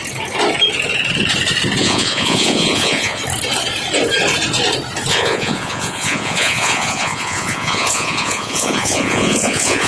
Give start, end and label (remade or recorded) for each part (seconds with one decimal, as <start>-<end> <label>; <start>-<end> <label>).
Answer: 0.0-1.8 recorded; 1.8-3.2 remade; 3.2-5.1 recorded; 5.1-9.9 remade